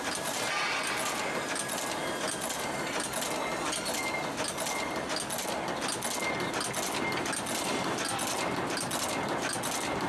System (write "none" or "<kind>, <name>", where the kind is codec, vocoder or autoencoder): none